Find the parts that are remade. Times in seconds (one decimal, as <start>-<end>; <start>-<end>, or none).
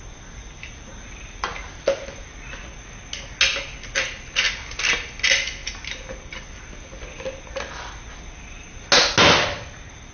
0.4-3.0; 5.6-7.4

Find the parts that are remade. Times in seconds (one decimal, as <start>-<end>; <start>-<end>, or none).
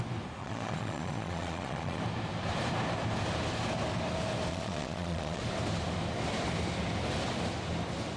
0.4-2.0; 4.5-5.4